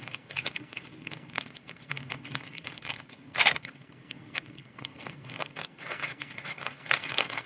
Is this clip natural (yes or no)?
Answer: no